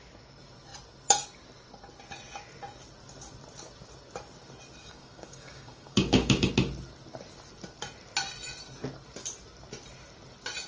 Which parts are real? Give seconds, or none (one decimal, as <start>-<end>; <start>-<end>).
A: 0.0-4.8; 6.5-10.7